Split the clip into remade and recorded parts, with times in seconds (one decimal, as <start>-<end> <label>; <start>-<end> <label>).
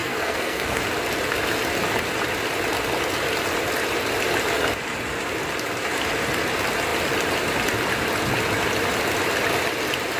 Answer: 0.0-0.8 remade; 0.8-10.2 recorded